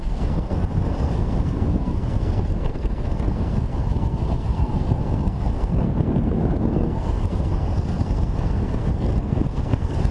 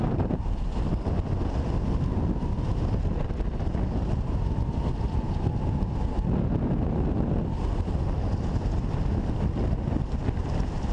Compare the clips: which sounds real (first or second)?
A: second